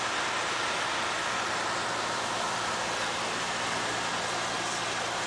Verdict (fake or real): real